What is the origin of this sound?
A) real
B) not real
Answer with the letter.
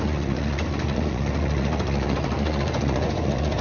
B